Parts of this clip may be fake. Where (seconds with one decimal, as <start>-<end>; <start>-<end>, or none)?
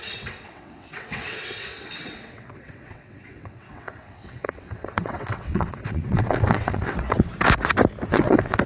0.0-7.3; 8.1-8.7